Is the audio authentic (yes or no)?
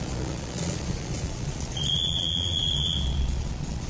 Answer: no